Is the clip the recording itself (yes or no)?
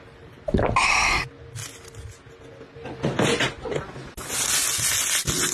yes